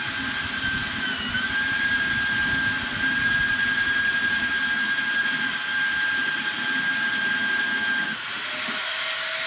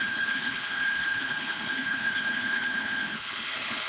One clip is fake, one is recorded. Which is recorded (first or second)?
first